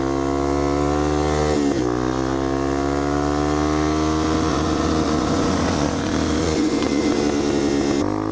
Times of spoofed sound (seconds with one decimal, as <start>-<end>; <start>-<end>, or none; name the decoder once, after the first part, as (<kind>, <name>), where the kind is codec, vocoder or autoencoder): 4.5-7.2 (vocoder, Vocos)